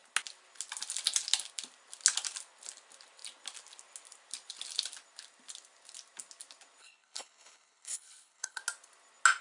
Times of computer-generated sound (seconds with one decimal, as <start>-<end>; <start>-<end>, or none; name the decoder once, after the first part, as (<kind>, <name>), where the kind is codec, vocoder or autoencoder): 6.8-8.6 (codec, HILCodec)